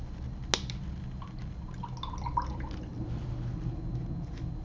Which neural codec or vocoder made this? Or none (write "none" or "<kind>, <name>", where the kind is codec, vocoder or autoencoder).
none